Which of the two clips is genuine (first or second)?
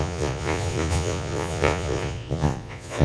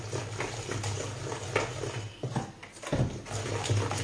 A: second